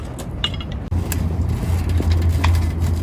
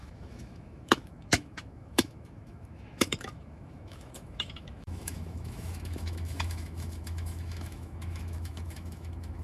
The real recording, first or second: first